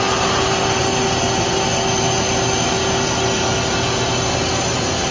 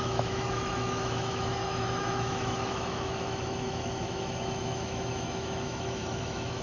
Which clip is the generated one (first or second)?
second